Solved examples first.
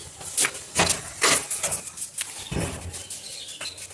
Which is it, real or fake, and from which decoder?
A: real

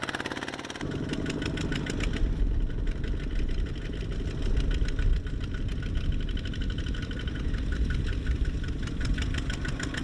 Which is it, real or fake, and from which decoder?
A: real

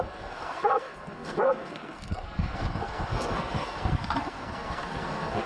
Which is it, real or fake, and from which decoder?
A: fake, codec, SNAC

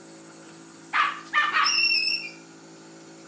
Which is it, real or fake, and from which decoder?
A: real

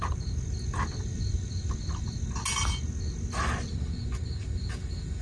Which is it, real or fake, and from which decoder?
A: real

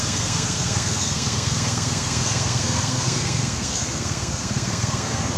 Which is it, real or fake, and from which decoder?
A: fake, codec, SNAC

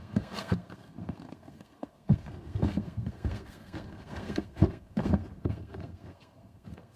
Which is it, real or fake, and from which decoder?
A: fake, codec, SNAC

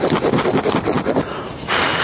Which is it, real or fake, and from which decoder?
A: real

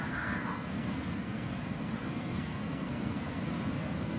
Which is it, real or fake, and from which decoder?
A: fake, codec, SNAC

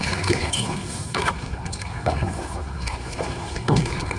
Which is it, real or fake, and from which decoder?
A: fake, codec, SNAC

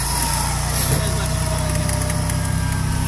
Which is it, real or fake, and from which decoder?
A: real